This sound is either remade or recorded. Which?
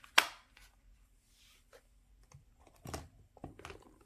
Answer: recorded